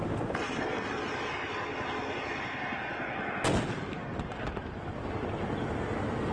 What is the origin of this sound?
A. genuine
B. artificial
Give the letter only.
A